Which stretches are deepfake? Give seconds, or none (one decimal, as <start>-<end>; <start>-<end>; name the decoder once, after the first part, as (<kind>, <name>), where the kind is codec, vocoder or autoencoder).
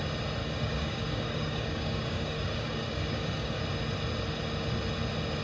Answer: 0.4-3.6 (codec, DAC)